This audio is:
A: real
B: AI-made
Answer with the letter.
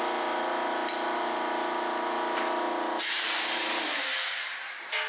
A